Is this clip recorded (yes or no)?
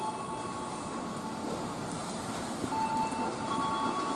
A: yes